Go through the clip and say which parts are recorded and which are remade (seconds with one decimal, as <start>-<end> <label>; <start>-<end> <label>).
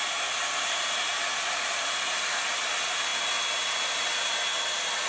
0.0-5.1 recorded